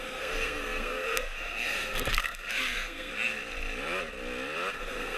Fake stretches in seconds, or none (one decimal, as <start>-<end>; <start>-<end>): 0.0-3.1; 4.7-5.2